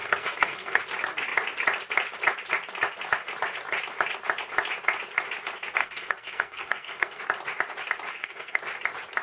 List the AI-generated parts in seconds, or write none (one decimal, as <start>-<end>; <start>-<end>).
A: 0.0-0.8; 5.8-7.2; 8.1-8.6